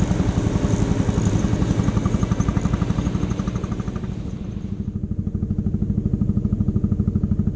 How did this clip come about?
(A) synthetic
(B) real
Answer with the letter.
B